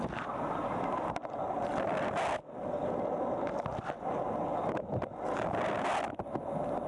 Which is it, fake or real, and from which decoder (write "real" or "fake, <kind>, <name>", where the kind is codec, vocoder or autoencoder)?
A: real